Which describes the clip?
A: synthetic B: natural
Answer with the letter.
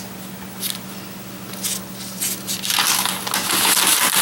B